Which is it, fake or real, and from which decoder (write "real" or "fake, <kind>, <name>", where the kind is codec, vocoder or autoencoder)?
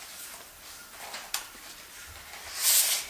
real